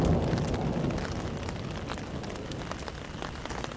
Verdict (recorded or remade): recorded